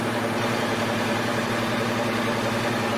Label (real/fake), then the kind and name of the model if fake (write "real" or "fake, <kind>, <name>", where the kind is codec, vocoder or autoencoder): fake, vocoder, BigVGAN v2